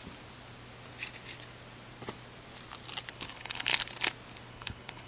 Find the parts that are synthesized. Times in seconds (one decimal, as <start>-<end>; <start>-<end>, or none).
3.1-3.7; 4.5-5.1